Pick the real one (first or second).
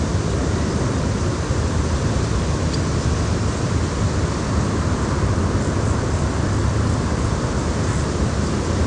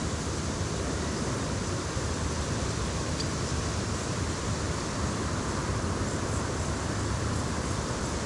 first